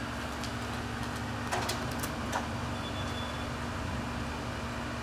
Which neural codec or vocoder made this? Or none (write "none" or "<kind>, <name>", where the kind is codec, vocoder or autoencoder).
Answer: none